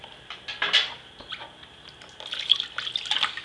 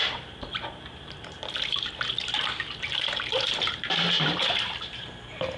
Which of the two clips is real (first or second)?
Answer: first